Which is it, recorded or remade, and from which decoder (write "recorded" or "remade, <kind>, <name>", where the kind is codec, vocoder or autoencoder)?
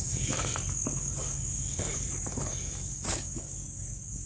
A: remade, codec, DAC